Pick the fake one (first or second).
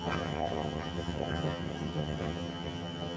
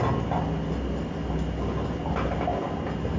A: first